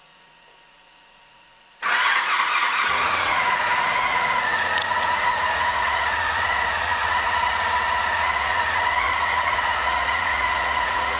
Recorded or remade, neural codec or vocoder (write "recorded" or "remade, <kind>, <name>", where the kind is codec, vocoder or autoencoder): remade, vocoder, Vocos